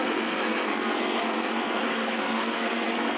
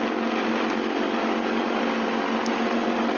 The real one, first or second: second